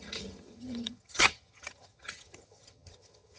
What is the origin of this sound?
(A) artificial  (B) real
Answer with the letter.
A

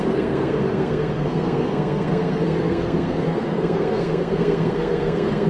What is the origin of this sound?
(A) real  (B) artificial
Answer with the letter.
B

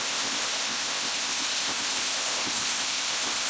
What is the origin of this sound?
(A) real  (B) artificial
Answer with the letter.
B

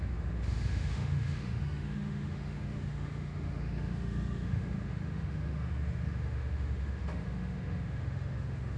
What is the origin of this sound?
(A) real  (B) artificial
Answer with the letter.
B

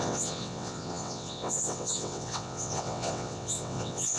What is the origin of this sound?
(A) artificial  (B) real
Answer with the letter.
A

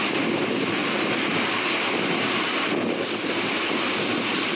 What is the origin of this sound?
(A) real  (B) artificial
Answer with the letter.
A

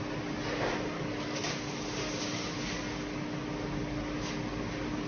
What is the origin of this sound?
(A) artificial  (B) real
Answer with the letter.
B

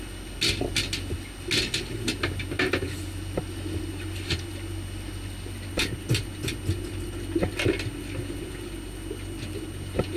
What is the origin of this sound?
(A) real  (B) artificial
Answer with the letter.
A